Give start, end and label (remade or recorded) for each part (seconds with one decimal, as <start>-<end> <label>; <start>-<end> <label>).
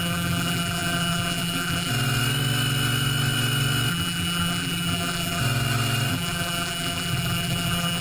0.0-1.9 remade; 1.9-3.9 recorded; 3.9-5.4 remade; 5.4-6.1 recorded; 6.1-8.0 remade